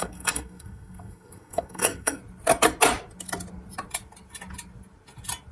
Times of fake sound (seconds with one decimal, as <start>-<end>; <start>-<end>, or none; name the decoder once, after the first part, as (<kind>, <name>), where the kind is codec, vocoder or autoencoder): 0.0-2.2 (codec, SNAC)